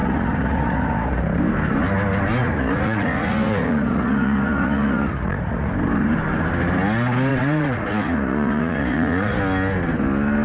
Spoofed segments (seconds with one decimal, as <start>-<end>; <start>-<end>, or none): 0.0-1.2; 2.4-5.7; 7.3-9.4